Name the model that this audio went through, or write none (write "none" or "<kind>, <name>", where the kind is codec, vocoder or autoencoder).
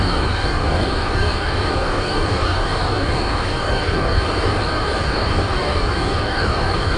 codec, DAC